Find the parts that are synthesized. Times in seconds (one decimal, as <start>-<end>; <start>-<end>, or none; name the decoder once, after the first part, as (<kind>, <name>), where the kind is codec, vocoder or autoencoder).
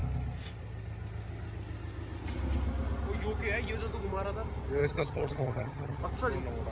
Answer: 4.8-6.0 (vocoder, HiFi-GAN)